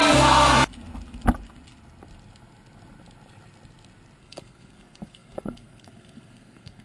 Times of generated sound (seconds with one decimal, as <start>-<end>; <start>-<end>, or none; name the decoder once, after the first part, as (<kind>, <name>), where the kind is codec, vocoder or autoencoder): 0.0-0.5 (codec, SNAC); 4.2-6.8